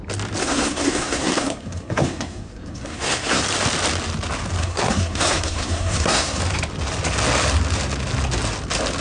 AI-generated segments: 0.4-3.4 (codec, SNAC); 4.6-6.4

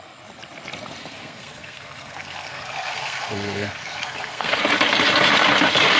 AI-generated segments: 1.0-4.6 (codec, SNAC)